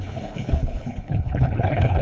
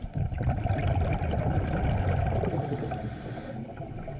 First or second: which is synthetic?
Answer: first